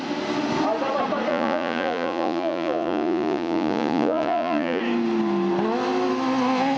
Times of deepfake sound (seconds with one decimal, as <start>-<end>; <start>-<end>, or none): 1.3-4.8